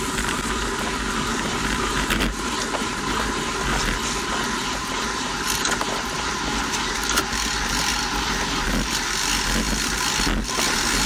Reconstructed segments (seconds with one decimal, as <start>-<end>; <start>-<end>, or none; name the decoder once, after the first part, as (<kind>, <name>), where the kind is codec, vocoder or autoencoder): 1.3-3.3 (vocoder, BigVGAN v2); 4.6-6.3